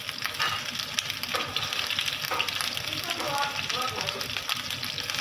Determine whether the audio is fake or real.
real